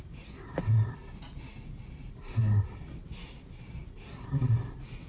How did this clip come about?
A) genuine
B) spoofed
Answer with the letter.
A